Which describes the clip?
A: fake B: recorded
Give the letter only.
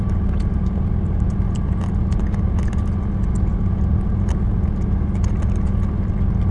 B